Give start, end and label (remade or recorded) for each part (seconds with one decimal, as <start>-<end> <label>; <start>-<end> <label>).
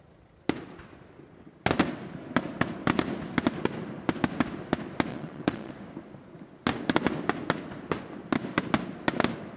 0.0-5.1 recorded; 5.1-5.7 remade; 5.7-9.6 recorded